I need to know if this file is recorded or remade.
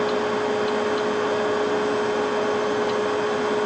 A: recorded